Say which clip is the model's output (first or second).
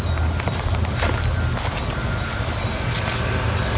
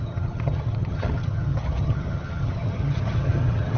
second